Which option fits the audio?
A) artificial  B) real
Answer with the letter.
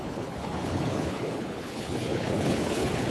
A